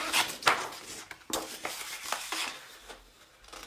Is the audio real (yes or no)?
yes